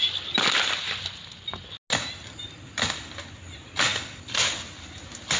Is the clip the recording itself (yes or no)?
yes